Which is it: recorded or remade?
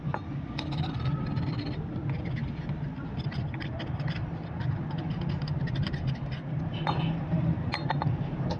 recorded